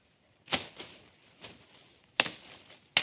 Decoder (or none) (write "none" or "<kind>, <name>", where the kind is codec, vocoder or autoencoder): none